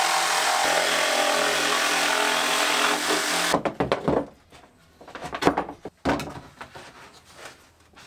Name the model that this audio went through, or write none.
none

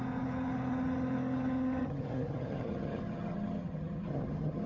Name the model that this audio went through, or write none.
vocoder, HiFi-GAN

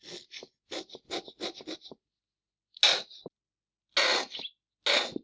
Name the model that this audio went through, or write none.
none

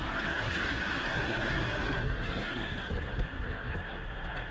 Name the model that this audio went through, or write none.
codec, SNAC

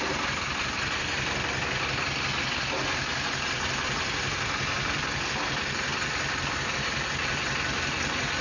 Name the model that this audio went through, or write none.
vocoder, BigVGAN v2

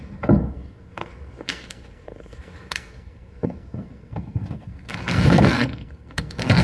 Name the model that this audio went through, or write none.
codec, SNAC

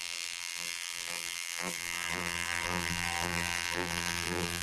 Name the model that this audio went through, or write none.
vocoder, BigVGAN v2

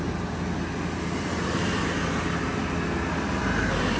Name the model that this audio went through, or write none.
none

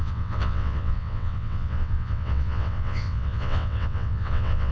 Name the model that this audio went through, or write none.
vocoder, WaveNeXt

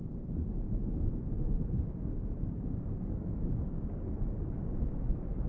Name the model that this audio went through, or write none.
codec, DAC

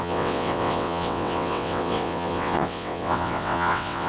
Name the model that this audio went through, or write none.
vocoder, WaveNeXt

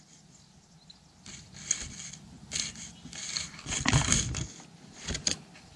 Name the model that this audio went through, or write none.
none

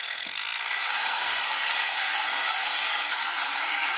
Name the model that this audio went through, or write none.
codec, SNAC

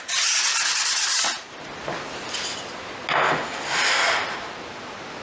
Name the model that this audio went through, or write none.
none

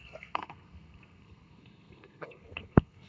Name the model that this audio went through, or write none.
codec, SNAC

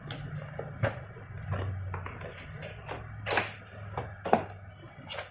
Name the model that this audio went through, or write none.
none